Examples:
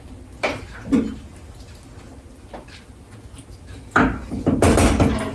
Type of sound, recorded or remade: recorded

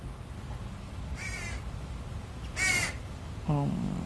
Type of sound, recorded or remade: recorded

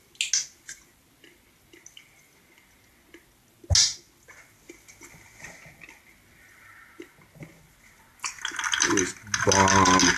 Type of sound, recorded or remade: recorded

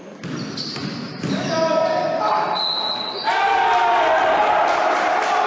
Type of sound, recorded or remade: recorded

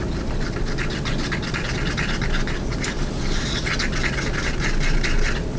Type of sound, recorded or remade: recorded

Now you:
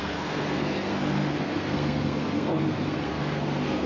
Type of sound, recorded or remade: remade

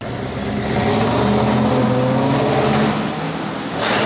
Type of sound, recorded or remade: recorded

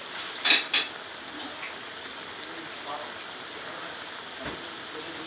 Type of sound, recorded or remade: recorded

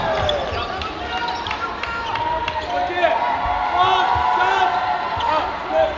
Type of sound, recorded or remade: recorded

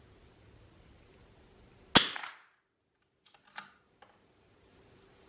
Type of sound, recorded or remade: recorded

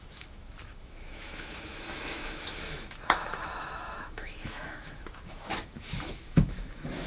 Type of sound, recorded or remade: remade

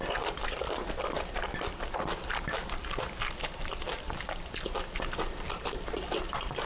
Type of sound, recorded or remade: recorded